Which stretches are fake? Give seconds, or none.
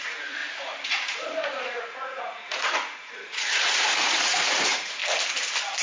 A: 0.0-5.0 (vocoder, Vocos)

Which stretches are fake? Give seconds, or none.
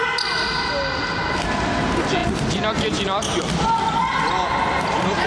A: 2.2-5.3 (vocoder, BigVGAN v2)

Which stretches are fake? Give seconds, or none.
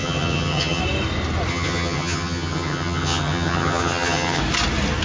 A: 0.0-0.8 (vocoder, HiFi-GAN); 1.5-4.4